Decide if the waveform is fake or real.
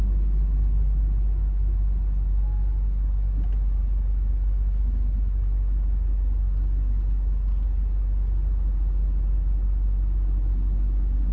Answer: real